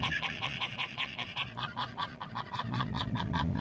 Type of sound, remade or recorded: remade